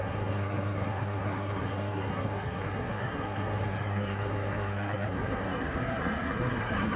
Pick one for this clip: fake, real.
fake